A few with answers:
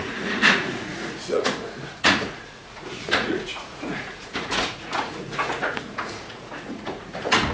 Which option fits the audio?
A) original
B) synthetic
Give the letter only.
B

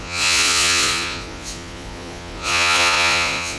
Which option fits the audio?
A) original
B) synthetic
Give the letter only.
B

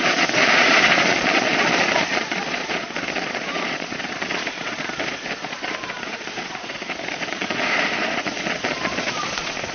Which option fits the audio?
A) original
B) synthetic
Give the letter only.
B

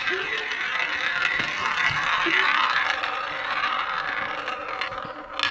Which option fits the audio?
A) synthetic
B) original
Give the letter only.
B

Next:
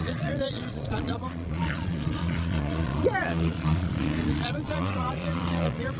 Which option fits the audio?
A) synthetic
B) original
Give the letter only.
A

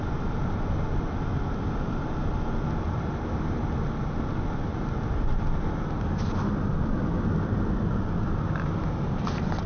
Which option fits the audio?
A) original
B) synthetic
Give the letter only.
A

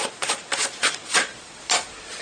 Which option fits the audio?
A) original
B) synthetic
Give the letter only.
B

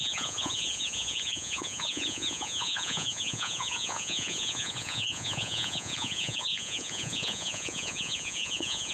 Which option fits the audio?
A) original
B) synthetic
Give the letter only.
B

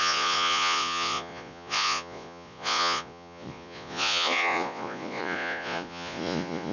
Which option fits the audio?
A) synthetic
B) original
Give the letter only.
A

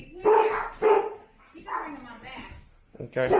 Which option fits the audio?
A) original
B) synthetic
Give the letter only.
A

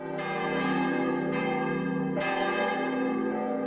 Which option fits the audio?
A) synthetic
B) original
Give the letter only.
A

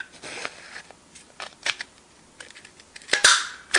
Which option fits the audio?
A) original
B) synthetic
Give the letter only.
A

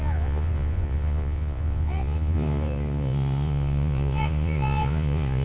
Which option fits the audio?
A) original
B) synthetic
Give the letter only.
B